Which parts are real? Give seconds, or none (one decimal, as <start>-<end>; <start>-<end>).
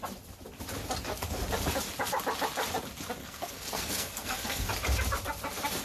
0.0-3.2; 4.7-5.8